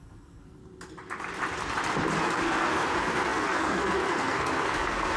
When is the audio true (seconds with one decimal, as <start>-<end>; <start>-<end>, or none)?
0.6-2.2